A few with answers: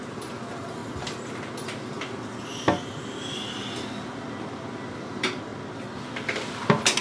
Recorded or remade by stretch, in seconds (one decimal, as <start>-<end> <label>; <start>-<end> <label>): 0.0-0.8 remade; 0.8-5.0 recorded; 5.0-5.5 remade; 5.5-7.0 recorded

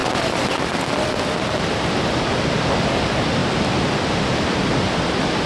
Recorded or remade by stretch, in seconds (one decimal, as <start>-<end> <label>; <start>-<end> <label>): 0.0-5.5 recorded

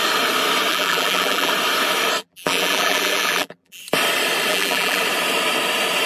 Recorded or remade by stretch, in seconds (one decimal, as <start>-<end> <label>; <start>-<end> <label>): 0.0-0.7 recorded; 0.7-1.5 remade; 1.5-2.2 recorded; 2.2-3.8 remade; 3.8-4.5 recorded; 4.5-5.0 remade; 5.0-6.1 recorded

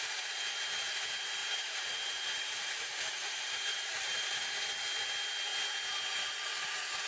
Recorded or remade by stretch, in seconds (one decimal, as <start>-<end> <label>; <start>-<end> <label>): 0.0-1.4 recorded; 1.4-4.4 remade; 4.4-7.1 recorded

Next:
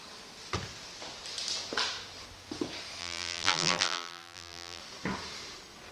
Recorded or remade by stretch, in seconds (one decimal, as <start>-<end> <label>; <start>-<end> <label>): 0.0-3.0 recorded; 3.0-4.8 remade; 4.8-5.9 recorded

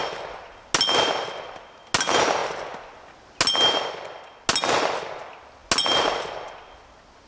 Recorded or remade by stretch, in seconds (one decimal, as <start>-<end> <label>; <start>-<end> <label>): 0.0-7.3 recorded